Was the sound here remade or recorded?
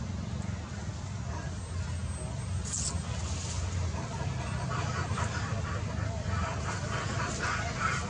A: recorded